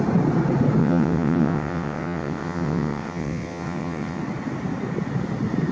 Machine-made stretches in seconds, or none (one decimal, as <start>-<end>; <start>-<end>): 0.8-4.2